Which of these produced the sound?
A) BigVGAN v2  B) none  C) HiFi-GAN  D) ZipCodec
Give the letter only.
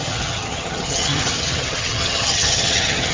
C